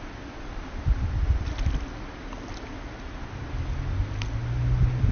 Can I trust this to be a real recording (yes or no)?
yes